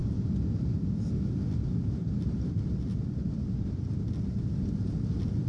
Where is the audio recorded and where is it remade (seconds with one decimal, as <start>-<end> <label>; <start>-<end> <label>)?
0.0-1.2 remade; 1.2-2.0 recorded; 2.0-4.1 remade; 4.1-5.5 recorded